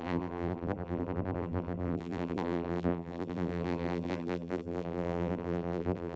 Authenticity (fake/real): fake